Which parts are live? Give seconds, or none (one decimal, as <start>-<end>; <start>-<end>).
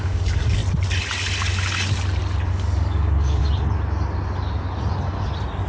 0.6-2.5; 3.4-5.7